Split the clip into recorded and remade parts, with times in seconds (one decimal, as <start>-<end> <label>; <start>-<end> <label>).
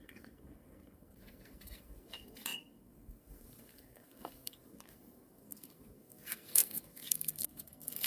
0.0-8.1 remade